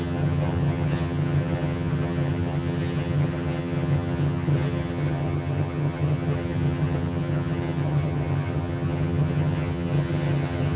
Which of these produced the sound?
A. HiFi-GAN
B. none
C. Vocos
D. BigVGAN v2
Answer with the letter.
A